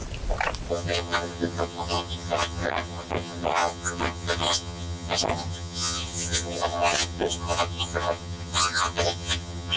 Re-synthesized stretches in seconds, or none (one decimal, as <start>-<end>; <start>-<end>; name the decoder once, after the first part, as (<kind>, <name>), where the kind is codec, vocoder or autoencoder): 0.7-9.8 (vocoder, HiFi-GAN)